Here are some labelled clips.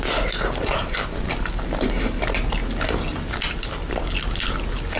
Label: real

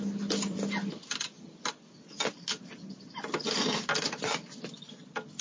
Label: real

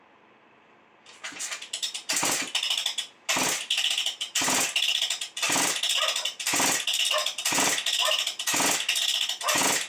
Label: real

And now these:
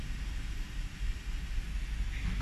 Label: real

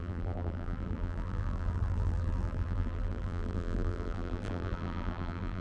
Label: fake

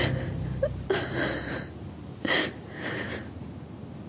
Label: real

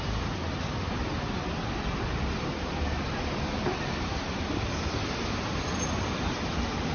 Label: fake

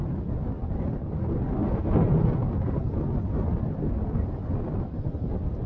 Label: real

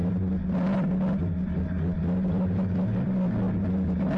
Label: real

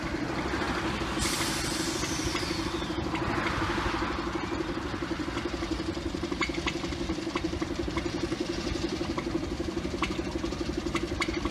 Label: fake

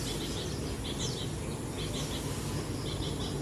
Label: real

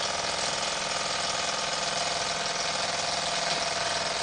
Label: real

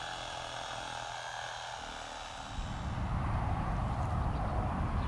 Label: real